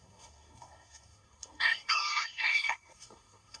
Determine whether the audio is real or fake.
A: fake